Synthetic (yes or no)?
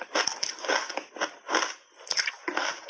no